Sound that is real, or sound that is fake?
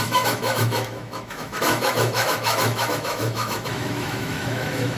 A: fake